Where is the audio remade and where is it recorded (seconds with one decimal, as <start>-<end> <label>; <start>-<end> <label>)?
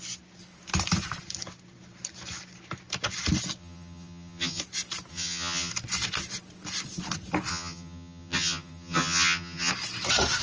0.0-3.6 recorded; 3.6-4.6 remade; 4.6-5.1 recorded; 5.1-5.7 remade; 5.7-7.5 recorded; 7.5-9.7 remade; 9.7-10.4 recorded